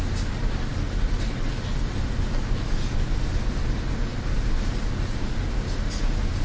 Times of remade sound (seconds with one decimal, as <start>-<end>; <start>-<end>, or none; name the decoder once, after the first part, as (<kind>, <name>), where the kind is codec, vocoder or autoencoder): none